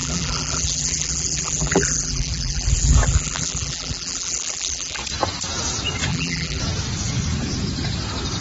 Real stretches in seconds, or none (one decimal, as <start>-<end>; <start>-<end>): 5.0-6.1; 6.6-8.4